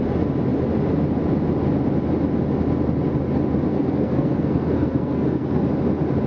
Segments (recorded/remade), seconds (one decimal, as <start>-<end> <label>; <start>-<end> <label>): 0.0-3.7 recorded; 3.7-5.6 remade; 5.6-6.3 recorded